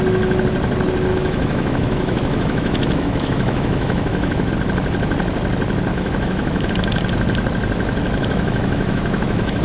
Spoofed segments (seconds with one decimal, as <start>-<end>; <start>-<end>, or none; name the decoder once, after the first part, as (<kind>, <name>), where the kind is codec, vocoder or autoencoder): 1.1-4.5 (autoencoder, DAC-VAE); 5.9-6.7; 8.2-9.6